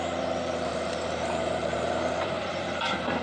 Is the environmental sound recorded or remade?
remade